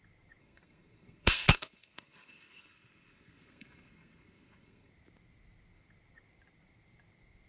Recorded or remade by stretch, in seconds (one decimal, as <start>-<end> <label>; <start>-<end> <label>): 0.0-0.4 recorded; 0.4-4.9 remade; 4.9-7.5 recorded